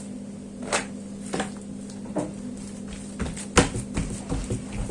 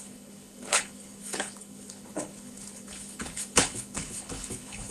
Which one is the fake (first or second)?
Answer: second